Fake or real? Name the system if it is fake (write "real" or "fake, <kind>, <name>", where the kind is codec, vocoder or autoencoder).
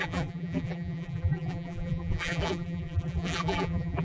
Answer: fake, vocoder, BigVGAN v2